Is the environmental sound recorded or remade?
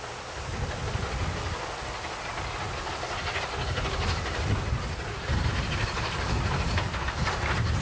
recorded